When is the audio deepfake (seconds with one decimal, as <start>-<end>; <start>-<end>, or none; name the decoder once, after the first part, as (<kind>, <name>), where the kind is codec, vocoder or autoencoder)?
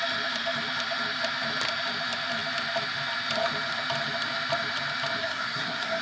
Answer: 5.2-6.0 (codec, SNAC)